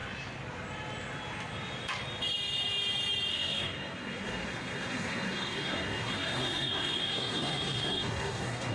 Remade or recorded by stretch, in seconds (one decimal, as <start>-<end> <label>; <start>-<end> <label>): 0.0-3.3 recorded; 3.3-8.7 remade